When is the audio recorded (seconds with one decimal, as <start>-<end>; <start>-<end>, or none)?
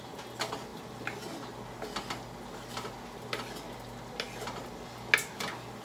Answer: 0.0-5.8